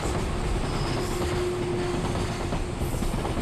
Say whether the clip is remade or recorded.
recorded